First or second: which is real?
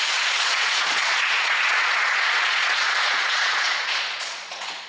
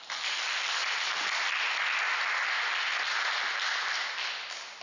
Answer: second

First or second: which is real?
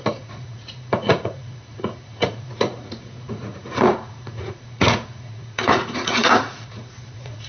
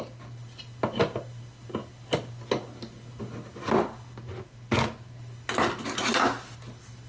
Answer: second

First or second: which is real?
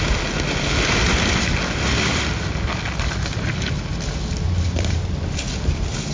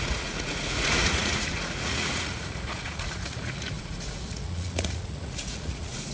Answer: first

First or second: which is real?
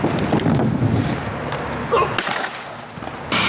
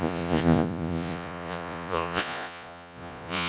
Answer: first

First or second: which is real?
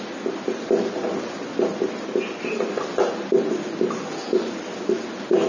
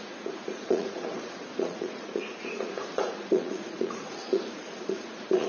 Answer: first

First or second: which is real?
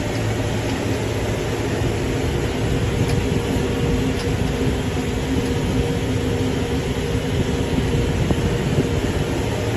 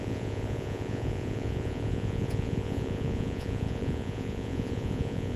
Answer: first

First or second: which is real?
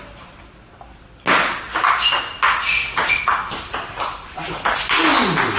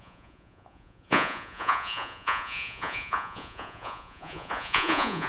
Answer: first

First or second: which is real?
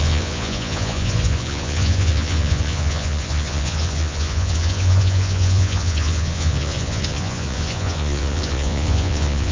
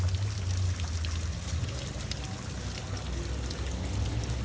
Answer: second